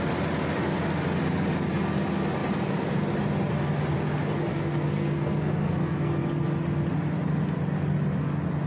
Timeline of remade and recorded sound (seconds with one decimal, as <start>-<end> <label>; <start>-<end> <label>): 0.0-4.5 recorded; 4.5-6.2 remade; 6.2-8.7 recorded